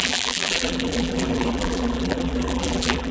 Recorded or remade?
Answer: remade